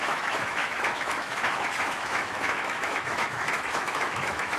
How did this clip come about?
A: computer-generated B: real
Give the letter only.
A